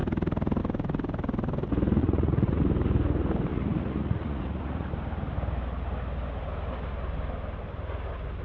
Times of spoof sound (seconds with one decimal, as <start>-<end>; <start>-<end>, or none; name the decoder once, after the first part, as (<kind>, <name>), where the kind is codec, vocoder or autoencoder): 2.0-2.6 (vocoder, Vocos); 3.5-4.9